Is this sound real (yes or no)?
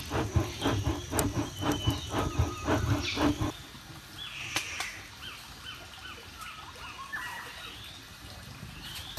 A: yes